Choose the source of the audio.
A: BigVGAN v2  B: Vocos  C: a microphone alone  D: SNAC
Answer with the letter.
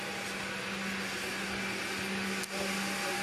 C